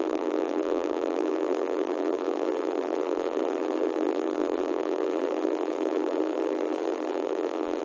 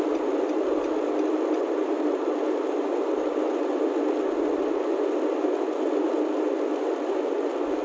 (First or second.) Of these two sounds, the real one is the second